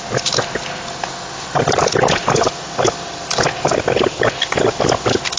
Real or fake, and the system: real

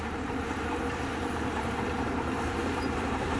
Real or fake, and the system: fake, vocoder, BigVGAN v2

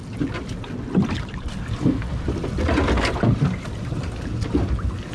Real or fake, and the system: real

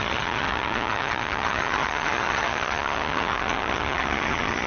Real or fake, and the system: fake, vocoder, HiFi-GAN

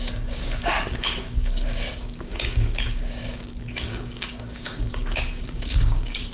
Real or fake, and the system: fake, codec, DAC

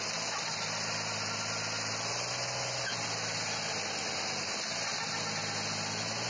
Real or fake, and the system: real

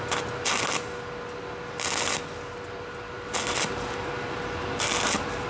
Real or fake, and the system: real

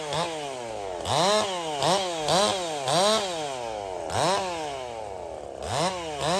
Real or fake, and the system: real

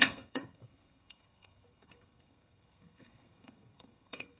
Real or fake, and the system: fake, codec, SNAC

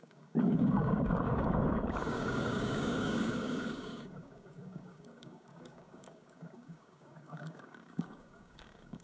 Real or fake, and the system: fake, codec, DAC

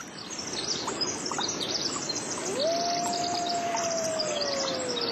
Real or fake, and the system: real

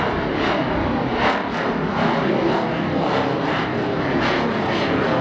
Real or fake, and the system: real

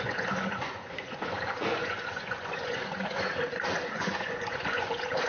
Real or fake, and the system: fake, vocoder, Vocos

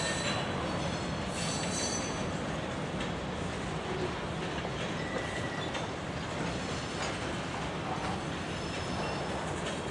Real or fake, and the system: real